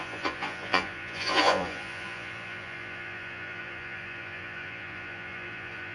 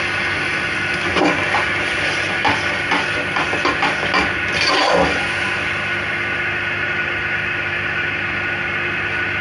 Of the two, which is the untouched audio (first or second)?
second